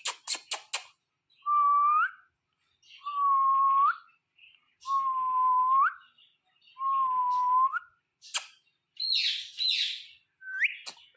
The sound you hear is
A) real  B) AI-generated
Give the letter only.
A